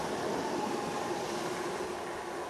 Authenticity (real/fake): real